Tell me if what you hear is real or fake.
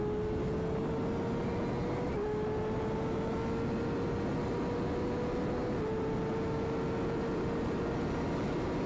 real